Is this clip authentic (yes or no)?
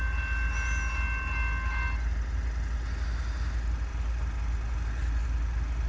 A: yes